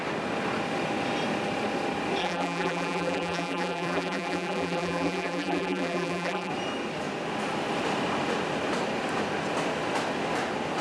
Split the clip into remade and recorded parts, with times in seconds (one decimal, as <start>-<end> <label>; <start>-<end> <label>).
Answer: 0.0-2.2 recorded; 2.2-6.5 remade; 6.5-10.8 recorded